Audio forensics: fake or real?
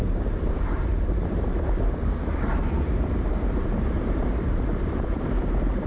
fake